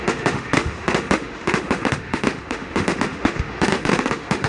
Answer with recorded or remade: remade